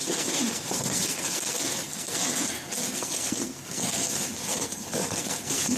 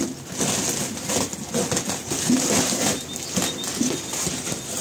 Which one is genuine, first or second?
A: second